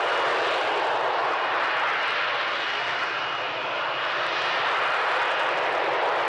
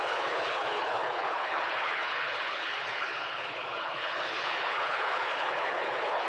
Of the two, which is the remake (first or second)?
second